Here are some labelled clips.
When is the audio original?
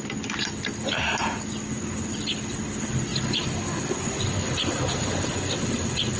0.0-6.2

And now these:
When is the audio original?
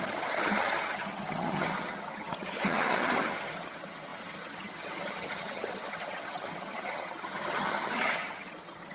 none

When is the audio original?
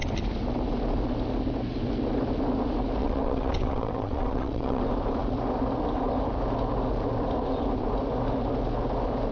0.0-3.0; 4.8-9.3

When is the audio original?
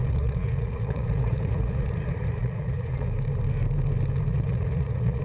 3.1-4.3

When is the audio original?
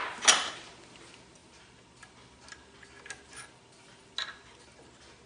0.0-5.3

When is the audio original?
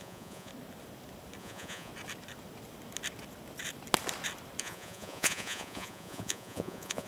0.5-1.4; 1.9-4.6